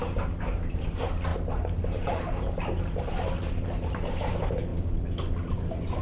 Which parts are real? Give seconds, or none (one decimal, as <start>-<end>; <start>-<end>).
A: 4.7-5.5